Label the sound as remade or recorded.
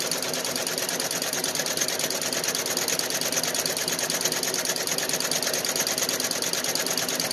recorded